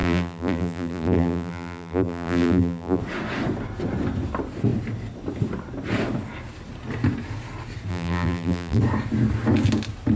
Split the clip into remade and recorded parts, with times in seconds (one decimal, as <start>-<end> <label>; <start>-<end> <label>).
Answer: 0.0-3.0 remade; 3.0-7.9 recorded; 7.9-8.8 remade; 8.8-10.2 recorded